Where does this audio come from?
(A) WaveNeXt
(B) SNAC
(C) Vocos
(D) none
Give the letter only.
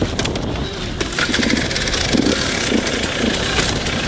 D